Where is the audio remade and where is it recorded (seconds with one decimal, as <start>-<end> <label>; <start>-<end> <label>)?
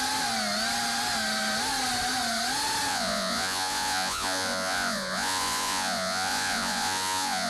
0.0-2.9 recorded; 2.9-7.5 remade